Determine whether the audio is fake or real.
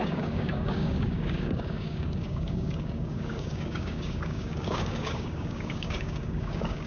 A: fake